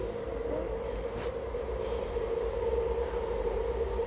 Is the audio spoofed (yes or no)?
no